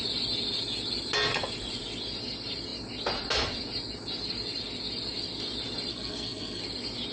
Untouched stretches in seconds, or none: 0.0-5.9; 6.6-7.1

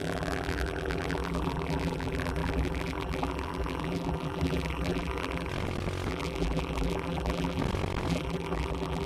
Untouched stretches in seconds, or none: 5.5-6.1; 7.6-8.1

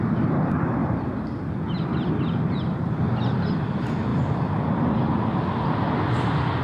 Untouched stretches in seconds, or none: 0.0-0.8; 3.5-4.1; 5.5-6.6